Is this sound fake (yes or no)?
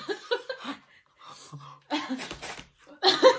no